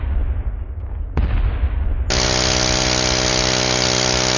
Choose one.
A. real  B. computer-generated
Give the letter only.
A